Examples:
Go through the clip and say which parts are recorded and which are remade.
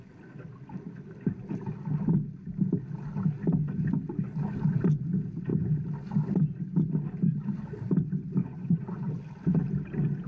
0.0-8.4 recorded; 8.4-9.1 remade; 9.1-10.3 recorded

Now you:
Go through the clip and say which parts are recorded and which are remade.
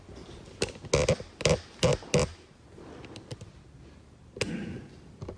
0.0-5.4 recorded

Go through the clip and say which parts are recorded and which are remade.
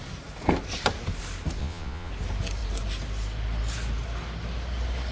0.0-1.6 recorded; 1.6-2.1 remade; 2.1-5.1 recorded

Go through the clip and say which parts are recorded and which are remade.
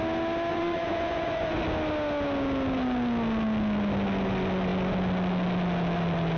0.0-0.5 recorded; 0.5-1.6 remade; 1.6-6.4 recorded